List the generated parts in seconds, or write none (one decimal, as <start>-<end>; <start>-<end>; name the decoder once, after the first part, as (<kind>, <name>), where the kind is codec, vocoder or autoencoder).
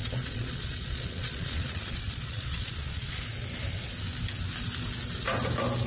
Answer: 0.0-3.2 (vocoder, Vocos)